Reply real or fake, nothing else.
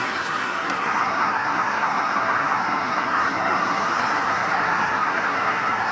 fake